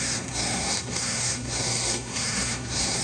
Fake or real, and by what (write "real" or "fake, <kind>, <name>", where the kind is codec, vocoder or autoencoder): fake, codec, SNAC